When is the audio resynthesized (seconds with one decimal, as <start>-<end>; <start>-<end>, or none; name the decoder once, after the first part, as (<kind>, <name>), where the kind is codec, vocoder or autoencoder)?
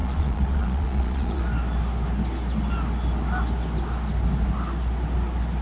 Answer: 0.0-1.4 (vocoder, Vocos)